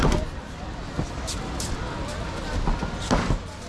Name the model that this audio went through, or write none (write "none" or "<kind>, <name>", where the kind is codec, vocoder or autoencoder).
none